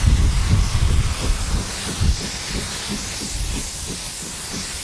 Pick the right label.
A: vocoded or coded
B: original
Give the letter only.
B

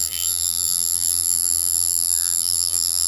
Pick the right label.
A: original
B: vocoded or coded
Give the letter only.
B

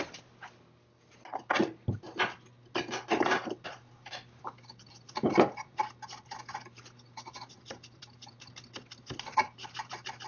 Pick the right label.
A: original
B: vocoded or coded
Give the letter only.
A